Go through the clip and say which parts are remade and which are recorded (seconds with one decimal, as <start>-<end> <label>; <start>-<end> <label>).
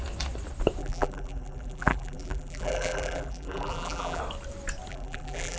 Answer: 0.0-0.8 recorded; 0.8-4.2 remade; 4.2-4.9 recorded; 4.9-5.6 remade